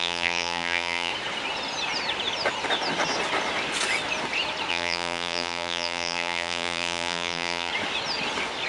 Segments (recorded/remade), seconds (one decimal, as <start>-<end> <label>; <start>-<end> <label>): 0.0-1.1 remade; 1.1-4.7 recorded; 4.7-7.7 remade; 7.7-8.7 recorded